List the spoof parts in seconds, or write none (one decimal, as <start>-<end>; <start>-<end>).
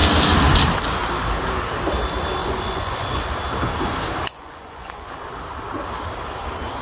2.4-3.2; 4.3-5.1